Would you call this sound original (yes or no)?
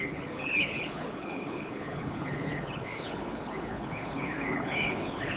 no